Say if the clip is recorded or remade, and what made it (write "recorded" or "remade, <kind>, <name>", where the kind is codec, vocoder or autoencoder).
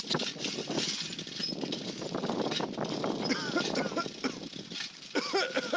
recorded